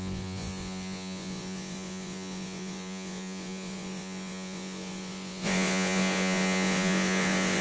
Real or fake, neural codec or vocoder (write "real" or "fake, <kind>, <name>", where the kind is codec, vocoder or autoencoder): fake, vocoder, Vocos